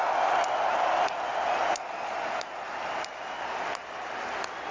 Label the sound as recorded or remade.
recorded